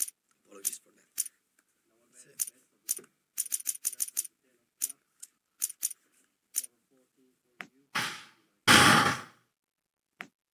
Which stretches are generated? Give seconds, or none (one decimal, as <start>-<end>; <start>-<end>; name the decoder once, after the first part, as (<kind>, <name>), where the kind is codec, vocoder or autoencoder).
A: none